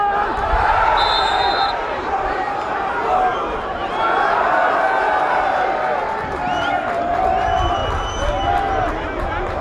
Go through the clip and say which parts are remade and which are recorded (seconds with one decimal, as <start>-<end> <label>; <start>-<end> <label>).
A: 0.0-3.3 remade; 3.3-5.7 recorded; 5.7-7.8 remade; 7.8-9.2 recorded; 9.2-9.6 remade